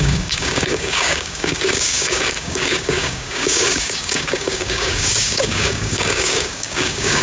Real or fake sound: fake